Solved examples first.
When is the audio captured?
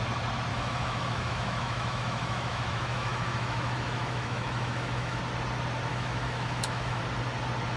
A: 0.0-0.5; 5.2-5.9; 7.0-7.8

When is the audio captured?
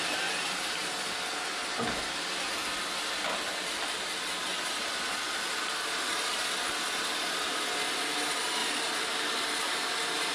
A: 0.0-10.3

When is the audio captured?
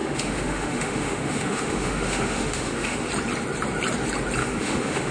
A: 3.1-4.4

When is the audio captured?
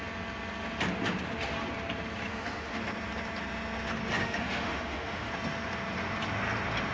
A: 0.0-2.3; 2.8-4.2; 5.3-6.9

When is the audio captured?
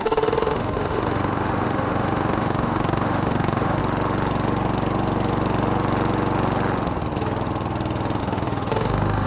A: 3.8-8.2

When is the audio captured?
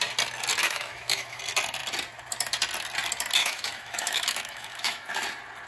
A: 0.0-0.6; 1.4-3.4; 5.1-5.7